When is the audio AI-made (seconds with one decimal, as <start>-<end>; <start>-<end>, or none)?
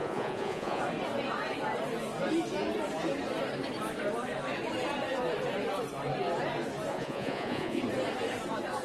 0.0-0.8; 6.9-7.8